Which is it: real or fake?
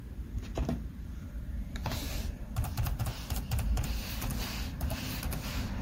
fake